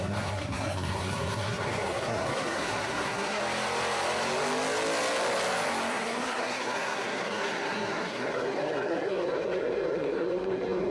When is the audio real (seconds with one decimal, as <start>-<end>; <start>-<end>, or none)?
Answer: 3.4-5.9